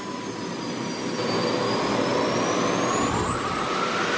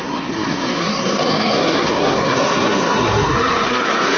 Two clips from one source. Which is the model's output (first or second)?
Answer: second